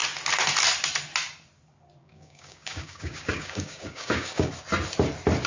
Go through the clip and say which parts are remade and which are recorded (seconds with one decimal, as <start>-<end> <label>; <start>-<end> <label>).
0.0-2.0 recorded; 2.0-4.5 remade; 4.5-5.5 recorded